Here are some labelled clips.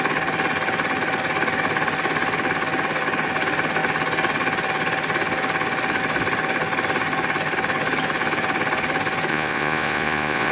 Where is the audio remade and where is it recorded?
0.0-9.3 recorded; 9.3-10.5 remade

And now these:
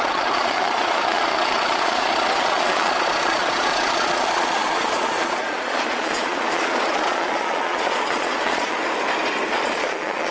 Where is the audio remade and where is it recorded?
0.0-8.8 remade; 8.8-9.5 recorded; 9.5-10.3 remade